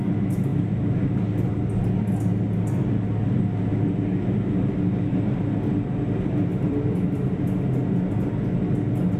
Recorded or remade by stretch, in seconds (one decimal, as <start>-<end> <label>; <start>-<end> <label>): 0.0-6.5 recorded; 6.5-7.5 remade; 7.5-9.2 recorded